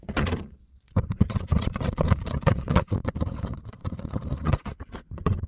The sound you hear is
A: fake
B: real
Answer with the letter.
A